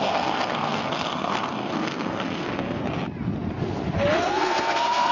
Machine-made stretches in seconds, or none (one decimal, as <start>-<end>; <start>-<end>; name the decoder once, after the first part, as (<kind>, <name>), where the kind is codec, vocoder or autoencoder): 0.0-2.8 (codec, SNAC); 4.2-5.1